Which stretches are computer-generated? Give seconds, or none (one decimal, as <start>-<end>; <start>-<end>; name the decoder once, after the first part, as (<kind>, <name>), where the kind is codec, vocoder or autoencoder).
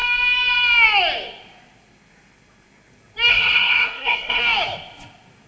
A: 3.3-4.4 (codec, SNAC)